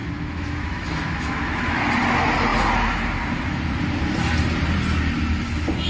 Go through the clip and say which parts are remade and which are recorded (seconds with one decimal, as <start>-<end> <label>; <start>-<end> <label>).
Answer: 0.0-1.8 remade; 1.8-5.9 recorded